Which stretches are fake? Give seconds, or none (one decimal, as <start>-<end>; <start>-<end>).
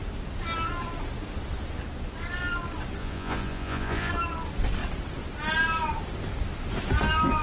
3.0-4.1